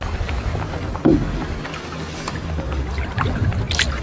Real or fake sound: real